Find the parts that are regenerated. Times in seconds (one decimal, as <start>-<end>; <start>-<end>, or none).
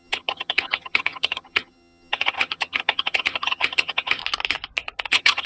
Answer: 0.0-4.2; 5.1-5.5